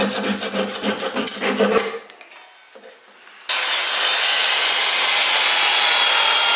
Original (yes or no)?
yes